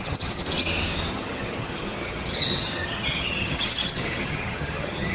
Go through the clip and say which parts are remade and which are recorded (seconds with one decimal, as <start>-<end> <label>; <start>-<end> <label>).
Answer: 0.0-0.4 remade; 0.4-1.1 recorded; 1.1-5.1 remade